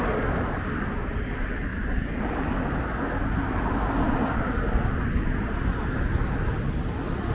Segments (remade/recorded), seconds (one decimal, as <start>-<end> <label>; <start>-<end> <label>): 0.0-1.7 recorded; 1.7-2.2 remade; 2.2-7.3 recorded